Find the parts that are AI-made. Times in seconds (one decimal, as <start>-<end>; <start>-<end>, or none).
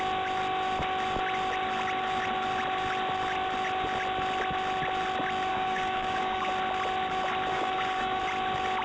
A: 5.5-6.5; 7.5-8.2